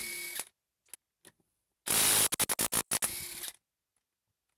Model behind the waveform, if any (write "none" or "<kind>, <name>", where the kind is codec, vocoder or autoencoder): none